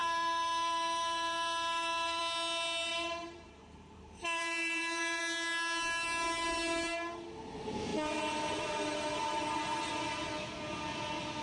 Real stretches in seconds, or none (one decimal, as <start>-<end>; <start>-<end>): 2.2-2.9; 5.2-7.9; 9.9-11.4